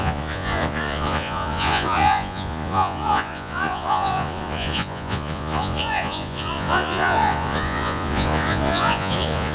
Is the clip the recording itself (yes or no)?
no